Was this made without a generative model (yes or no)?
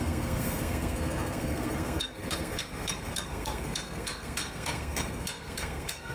no